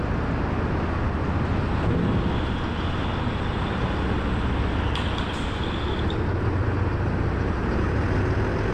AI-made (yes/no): no